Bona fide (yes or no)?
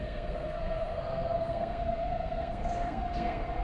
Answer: no